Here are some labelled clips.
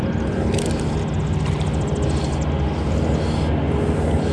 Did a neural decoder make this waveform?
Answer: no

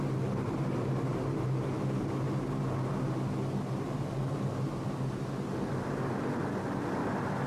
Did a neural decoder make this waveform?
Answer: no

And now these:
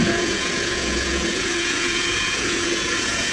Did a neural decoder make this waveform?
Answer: yes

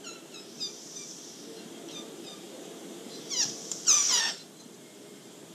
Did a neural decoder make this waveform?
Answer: yes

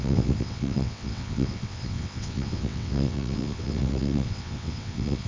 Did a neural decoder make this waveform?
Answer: yes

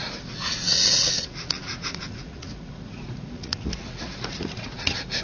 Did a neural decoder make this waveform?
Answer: yes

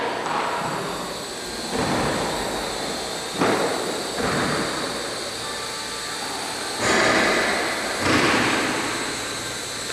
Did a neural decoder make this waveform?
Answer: no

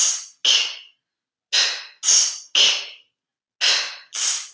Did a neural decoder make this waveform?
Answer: no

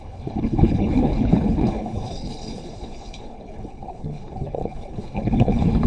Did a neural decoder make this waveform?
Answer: yes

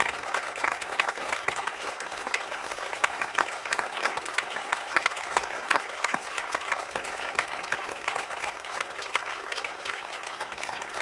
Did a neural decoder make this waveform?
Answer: yes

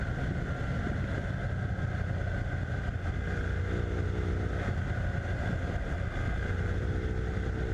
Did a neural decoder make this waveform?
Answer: no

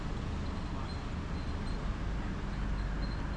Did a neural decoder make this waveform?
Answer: no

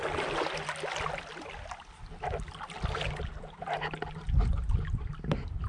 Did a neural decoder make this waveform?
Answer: no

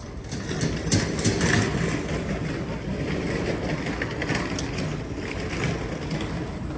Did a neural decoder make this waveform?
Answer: no